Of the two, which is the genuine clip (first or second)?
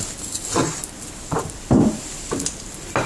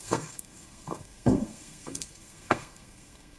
first